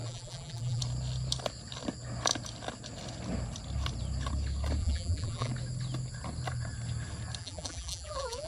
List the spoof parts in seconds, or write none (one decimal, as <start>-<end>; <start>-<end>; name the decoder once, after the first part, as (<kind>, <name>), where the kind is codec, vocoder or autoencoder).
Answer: 0.0-0.8 (vocoder, BigVGAN v2); 4.8-5.5; 7.4-8.5